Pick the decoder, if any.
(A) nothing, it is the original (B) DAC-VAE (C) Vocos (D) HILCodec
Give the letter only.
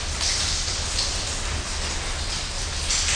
A